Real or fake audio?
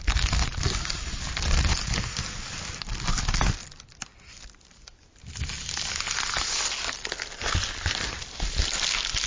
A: real